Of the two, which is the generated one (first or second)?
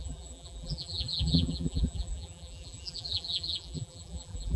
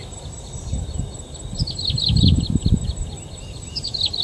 first